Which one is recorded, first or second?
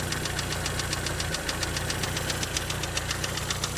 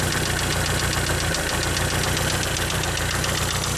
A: first